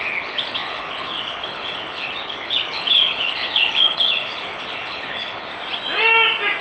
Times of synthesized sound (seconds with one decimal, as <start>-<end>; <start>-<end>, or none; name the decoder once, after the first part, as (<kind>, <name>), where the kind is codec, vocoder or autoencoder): 0.0-5.5 (codec, HILCodec)